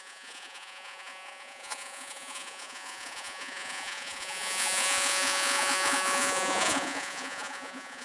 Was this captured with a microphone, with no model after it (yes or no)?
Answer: no